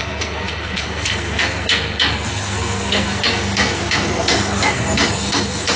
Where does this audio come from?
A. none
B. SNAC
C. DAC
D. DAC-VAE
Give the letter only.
B